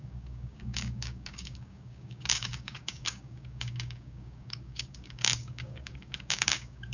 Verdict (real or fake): fake